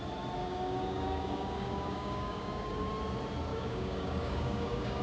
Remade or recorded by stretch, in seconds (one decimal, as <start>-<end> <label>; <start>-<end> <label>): 0.0-0.4 recorded; 0.4-2.9 remade; 2.9-3.5 recorded; 3.5-5.0 remade